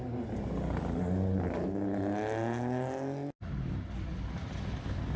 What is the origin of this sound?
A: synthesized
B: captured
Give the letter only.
B